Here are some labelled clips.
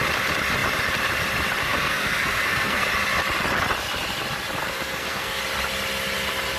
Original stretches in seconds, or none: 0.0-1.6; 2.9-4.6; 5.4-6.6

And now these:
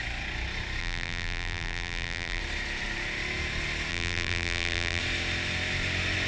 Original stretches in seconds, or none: 0.0-0.8; 2.4-3.9; 5.0-6.3

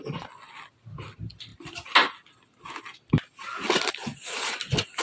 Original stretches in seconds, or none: 0.0-5.0

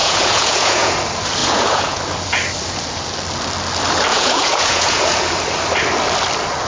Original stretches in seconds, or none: 0.9-1.4; 2.0-4.1; 5.3-6.7